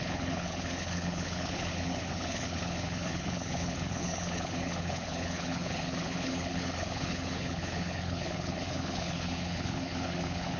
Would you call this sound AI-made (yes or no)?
yes